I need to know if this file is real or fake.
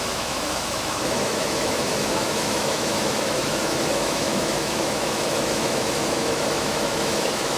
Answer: fake